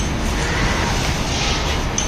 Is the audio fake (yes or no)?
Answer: no